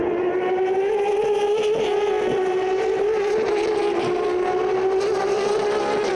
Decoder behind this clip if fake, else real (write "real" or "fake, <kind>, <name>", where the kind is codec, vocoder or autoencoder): real